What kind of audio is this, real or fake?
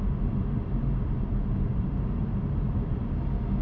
real